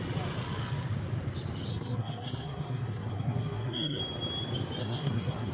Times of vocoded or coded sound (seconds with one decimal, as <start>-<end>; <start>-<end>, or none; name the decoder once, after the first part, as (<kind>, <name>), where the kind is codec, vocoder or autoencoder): 1.7-4.0 (codec, SNAC); 4.8-5.5